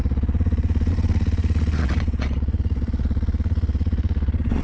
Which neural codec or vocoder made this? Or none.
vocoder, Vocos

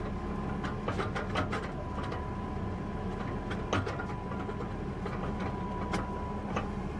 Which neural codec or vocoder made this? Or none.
none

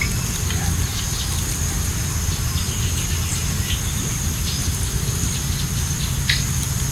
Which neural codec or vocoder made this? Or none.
none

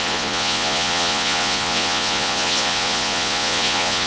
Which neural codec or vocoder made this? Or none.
vocoder, Vocos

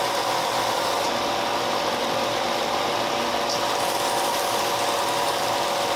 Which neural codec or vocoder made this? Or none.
none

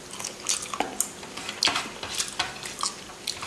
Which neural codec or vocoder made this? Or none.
none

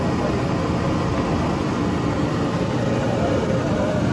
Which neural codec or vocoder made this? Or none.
none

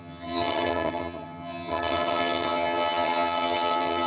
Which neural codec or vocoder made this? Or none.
vocoder, HiFi-GAN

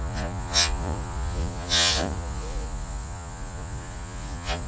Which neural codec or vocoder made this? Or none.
vocoder, Vocos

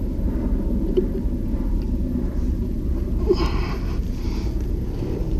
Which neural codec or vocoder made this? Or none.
vocoder, BigVGAN v2